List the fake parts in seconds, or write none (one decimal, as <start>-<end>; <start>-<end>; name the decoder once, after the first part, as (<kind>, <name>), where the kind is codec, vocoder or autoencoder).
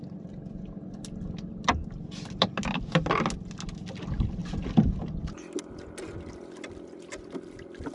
none